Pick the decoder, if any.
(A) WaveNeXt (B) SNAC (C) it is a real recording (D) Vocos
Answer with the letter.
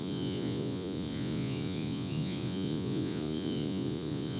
D